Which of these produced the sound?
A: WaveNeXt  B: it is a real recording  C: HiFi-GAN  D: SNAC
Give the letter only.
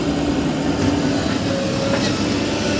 B